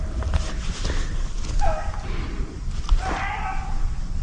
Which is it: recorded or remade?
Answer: recorded